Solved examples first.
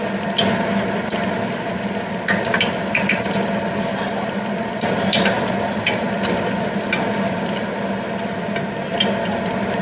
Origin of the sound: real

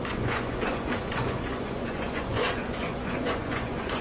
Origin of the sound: fake